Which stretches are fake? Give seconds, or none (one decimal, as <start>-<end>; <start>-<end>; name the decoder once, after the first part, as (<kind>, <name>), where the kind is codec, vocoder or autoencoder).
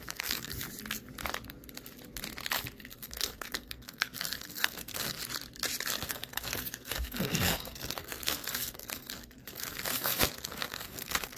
0.0-0.5 (codec, SNAC); 2.8-5.2; 6.0-11.4